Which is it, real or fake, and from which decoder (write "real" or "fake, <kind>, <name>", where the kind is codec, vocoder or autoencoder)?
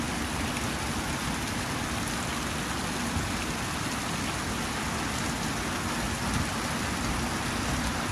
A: real